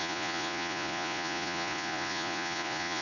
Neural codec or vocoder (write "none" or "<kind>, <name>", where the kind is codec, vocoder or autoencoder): vocoder, Vocos